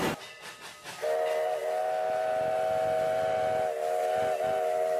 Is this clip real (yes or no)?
yes